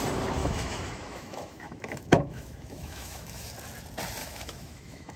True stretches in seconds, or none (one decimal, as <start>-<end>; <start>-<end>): 0.0-0.4; 3.5-4.2